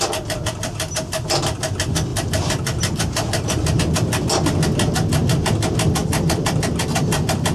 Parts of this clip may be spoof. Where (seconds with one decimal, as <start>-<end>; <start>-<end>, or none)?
2.1-3.8; 6.0-6.8